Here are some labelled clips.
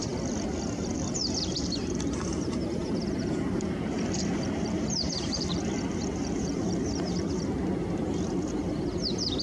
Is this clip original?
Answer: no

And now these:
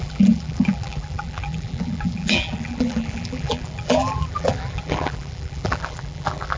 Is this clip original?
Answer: no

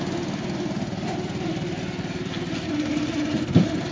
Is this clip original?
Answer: yes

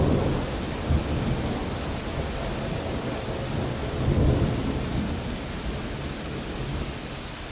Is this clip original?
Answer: yes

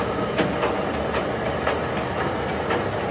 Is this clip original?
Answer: no